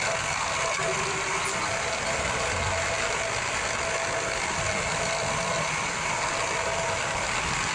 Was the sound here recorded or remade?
recorded